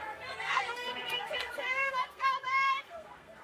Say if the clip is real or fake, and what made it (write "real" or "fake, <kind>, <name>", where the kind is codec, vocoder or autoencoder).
fake, codec, SNAC